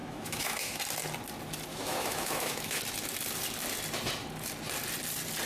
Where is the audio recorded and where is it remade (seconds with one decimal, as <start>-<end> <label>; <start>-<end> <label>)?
0.0-0.8 remade; 0.8-1.7 recorded; 1.7-2.8 remade; 2.8-5.5 recorded